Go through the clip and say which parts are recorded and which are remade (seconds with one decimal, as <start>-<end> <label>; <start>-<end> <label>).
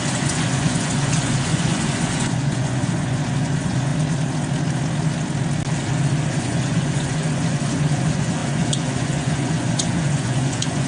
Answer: 0.0-3.9 remade; 3.9-6.2 recorded; 6.2-10.9 remade